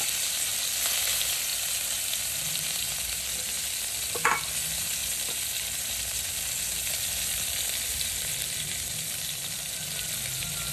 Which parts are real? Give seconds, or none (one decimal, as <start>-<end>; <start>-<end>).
0.0-1.5; 3.1-5.0; 9.7-10.7